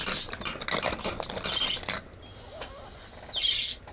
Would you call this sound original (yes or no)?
yes